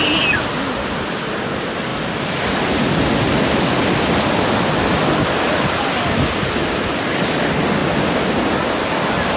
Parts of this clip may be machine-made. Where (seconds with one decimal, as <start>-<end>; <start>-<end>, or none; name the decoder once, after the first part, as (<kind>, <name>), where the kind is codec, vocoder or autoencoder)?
none